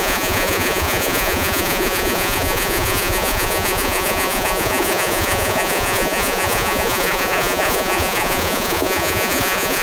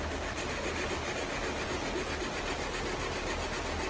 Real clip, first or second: second